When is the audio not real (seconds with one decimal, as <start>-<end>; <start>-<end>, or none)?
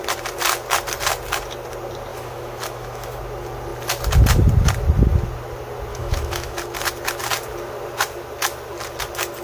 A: 2.1-3.2; 5.9-6.6